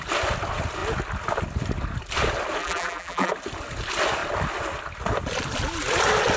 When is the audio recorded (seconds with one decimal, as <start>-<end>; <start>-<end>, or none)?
0.0-2.6; 3.3-6.4